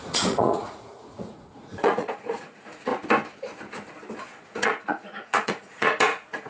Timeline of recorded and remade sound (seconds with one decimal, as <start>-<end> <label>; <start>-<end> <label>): 0.0-2.9 remade; 2.9-4.4 recorded; 4.4-6.5 remade